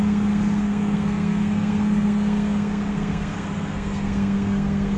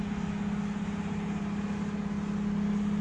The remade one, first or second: first